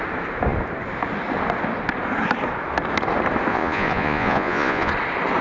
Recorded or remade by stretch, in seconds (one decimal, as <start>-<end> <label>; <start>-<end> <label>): 0.0-3.5 recorded; 3.5-4.9 remade; 4.9-5.4 recorded